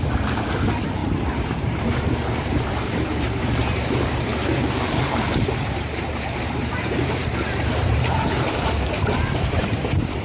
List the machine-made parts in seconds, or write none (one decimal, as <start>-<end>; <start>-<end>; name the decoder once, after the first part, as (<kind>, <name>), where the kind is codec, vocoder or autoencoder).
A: 0.0-10.2 (vocoder, BigVGAN v2)